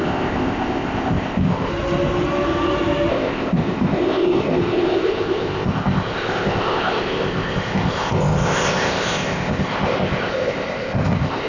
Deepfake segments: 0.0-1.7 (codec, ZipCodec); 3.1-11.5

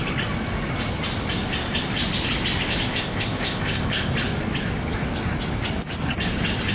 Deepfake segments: 2.9-4.1 (codec, ZipCodec)

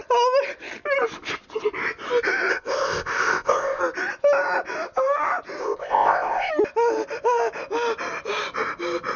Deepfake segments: 2.5-3.8 (codec, ZipCodec); 5.6-6.5

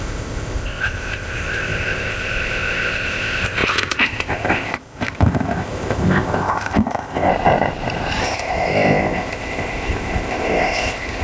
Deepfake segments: 0.0-7.3 (codec, ZipCodec); 8.2-11.2